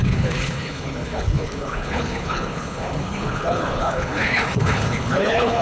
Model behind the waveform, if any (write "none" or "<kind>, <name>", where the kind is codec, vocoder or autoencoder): codec, HILCodec